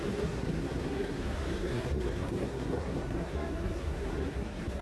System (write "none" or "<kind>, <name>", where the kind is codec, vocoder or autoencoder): codec, SNAC